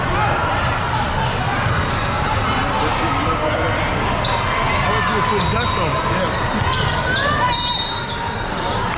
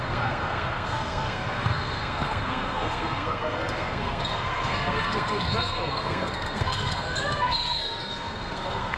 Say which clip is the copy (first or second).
second